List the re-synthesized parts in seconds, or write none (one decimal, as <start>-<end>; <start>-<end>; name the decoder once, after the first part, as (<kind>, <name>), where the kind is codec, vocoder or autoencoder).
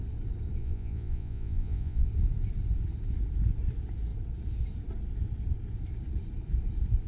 0.6-2.1 (vocoder, Vocos)